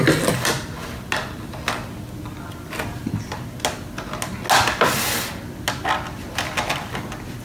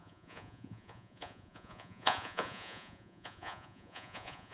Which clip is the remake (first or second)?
second